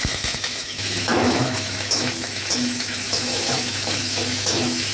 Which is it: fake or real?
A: fake